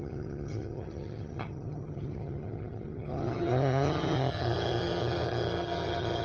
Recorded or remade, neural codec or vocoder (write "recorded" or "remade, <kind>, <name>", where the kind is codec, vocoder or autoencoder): remade, vocoder, HiFi-GAN